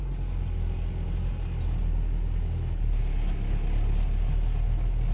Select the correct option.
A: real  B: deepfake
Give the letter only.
A